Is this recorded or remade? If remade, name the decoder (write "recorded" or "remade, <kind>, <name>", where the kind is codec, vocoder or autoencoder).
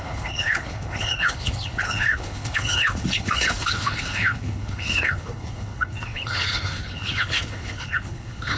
remade, codec, HILCodec